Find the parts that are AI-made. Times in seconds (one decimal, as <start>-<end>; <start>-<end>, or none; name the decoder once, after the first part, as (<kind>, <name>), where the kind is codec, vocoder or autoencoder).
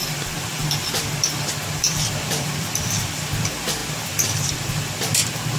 0.0-5.6 (vocoder, BigVGAN v2)